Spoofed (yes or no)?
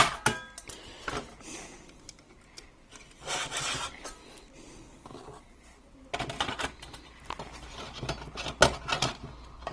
no